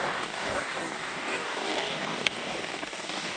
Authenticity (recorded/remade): remade